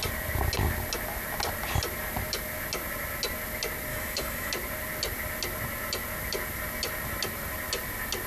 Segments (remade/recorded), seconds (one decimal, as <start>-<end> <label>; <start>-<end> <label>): 0.0-3.9 recorded; 3.9-4.5 remade; 4.5-8.3 recorded